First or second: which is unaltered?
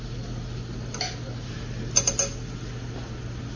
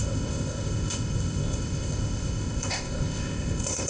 first